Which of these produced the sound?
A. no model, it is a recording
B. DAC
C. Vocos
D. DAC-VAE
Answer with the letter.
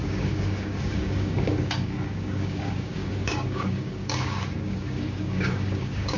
B